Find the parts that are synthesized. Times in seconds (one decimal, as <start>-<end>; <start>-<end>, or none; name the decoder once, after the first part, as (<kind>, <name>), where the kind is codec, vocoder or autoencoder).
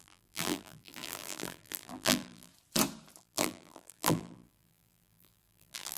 0.0-2.5 (vocoder, BigVGAN v2); 3.2-6.0